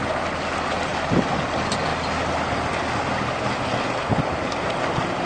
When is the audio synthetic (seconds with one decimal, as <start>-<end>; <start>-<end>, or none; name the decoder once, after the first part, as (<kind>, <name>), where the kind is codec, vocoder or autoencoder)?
none

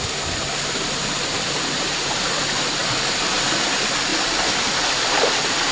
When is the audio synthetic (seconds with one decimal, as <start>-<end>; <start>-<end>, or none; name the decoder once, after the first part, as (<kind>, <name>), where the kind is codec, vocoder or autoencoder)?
4.1-5.3 (vocoder, BigVGAN v2)

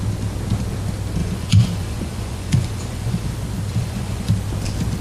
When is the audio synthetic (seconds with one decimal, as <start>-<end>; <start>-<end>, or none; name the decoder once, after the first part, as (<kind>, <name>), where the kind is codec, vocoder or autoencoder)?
1.2-3.3 (vocoder, Vocos); 3.7-4.3

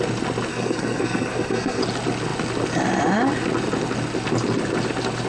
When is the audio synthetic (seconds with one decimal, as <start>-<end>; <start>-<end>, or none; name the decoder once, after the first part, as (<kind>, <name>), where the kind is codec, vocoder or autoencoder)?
0.5-1.8 (codec, SNAC)

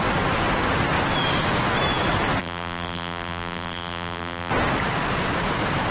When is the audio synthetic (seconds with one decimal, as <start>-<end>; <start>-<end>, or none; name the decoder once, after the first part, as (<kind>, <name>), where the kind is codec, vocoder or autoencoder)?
2.4-4.5 (vocoder, BigVGAN v2)